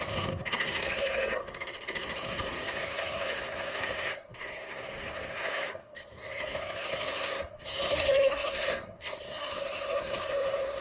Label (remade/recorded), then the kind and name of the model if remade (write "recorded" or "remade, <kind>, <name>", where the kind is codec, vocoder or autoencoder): remade, codec, SNAC